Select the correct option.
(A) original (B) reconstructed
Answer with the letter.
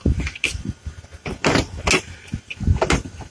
A